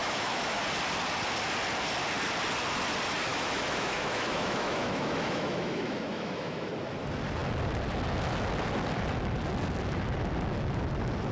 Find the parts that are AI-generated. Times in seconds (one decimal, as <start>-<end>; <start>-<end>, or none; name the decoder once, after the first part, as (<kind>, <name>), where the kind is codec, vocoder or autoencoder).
0.0-0.6 (autoencoder, DAC-VAE); 3.3-6.7